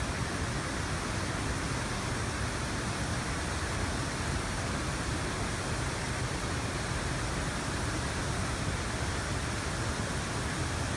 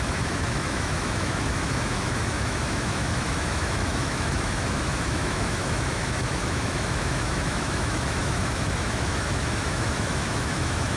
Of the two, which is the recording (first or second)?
first